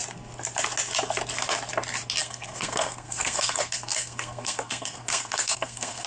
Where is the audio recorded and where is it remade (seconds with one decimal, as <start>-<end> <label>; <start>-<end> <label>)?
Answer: 0.0-2.2 recorded; 2.2-6.1 remade